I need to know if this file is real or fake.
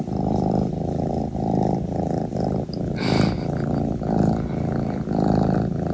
real